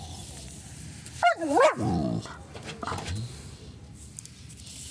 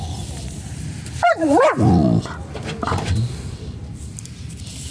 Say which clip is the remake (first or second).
second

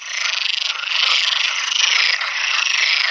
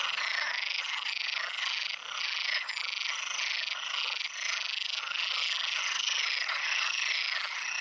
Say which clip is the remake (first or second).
first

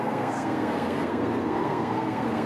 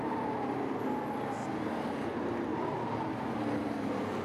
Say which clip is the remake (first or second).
first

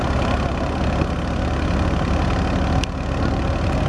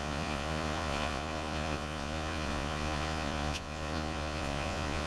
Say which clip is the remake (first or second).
second